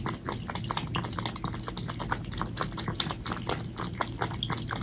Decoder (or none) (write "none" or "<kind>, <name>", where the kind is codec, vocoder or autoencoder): none